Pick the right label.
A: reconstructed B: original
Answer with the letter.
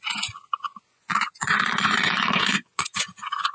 A